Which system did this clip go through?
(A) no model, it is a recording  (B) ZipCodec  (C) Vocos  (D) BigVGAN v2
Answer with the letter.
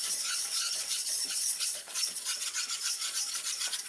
C